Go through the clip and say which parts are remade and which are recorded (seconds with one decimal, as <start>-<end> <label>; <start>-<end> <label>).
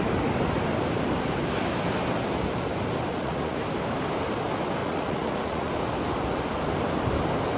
0.0-3.1 recorded; 3.1-3.6 remade; 3.6-4.8 recorded; 4.8-5.7 remade; 5.7-7.6 recorded